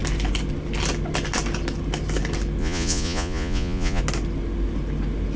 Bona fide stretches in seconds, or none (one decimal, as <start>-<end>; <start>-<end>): 0.0-2.6; 4.0-5.4